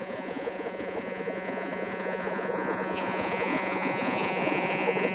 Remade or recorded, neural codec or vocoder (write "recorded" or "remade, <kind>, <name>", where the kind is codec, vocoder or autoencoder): remade, vocoder, Vocos